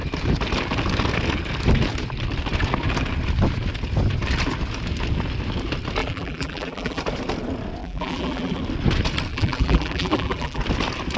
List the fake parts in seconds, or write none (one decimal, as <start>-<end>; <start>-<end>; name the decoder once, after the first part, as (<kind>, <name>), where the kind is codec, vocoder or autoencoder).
6.0-7.0 (vocoder, BigVGAN v2); 7.8-8.6; 9.3-10.6